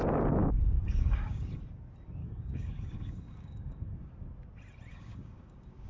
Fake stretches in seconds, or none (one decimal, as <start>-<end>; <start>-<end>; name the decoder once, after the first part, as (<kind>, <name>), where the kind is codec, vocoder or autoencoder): 0.4-1.6 (codec, DAC); 2.2-4.1; 4.9-5.9